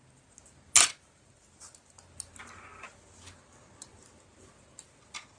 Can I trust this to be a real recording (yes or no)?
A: yes